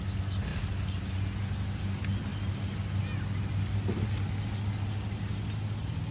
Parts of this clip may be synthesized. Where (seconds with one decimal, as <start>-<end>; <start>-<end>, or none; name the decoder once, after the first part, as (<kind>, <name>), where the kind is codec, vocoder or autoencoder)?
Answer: none